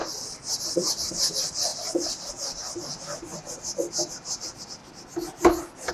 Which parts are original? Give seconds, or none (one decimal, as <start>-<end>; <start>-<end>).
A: 4.8-5.9